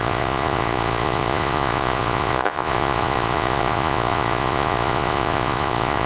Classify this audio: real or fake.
fake